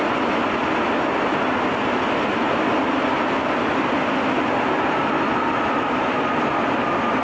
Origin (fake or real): real